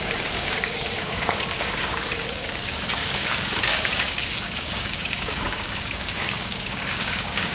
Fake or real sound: fake